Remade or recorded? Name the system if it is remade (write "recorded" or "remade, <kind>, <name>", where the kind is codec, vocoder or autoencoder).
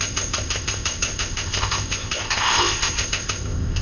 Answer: remade, codec, ZipCodec